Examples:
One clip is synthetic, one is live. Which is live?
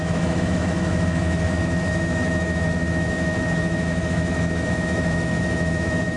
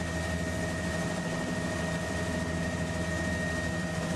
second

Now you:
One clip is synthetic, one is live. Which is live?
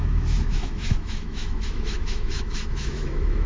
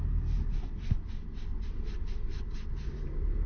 second